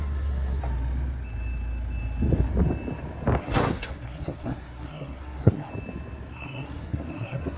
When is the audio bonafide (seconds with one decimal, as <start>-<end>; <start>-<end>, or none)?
0.6-3.4; 5.7-6.3